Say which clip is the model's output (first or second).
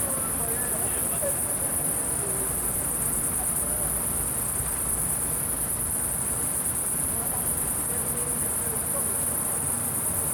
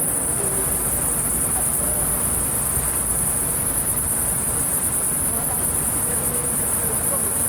first